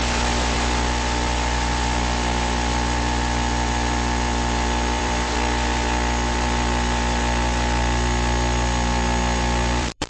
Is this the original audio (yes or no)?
no